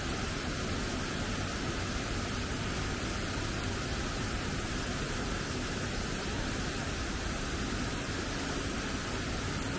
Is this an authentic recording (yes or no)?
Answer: yes